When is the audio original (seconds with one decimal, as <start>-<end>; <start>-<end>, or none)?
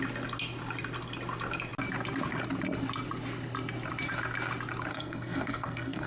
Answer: 0.0-4.9